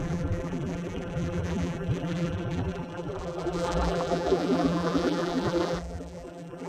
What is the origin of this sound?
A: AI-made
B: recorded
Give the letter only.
A